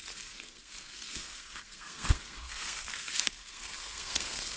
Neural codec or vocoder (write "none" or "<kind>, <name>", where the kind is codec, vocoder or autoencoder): codec, SNAC